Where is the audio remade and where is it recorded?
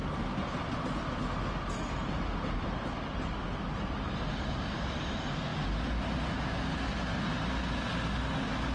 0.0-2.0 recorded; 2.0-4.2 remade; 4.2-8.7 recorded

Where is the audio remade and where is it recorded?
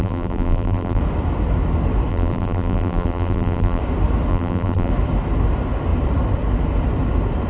0.0-1.0 remade; 1.0-2.1 recorded; 2.1-3.8 remade; 3.8-4.3 recorded; 4.3-4.9 remade; 4.9-7.5 recorded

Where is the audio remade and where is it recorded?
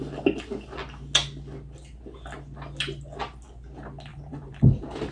0.0-4.1 recorded; 4.1-4.6 remade; 4.6-5.1 recorded